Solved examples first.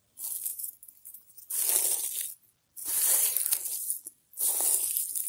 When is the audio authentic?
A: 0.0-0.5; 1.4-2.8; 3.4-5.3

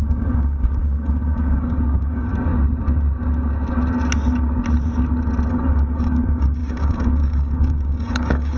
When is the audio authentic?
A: 2.3-5.5